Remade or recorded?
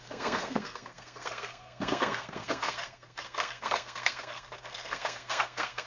remade